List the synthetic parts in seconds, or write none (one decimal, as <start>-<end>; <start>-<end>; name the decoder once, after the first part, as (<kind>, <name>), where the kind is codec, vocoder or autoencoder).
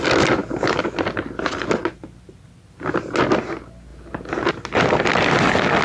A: none